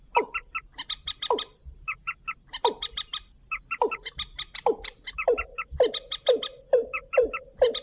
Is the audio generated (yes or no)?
no